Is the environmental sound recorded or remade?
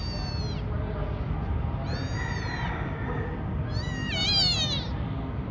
recorded